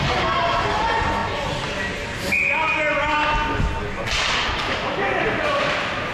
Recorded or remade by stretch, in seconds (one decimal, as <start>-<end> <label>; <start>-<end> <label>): 0.0-6.1 recorded